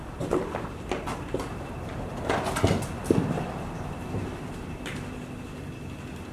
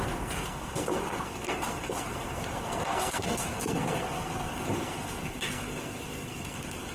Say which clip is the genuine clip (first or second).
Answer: first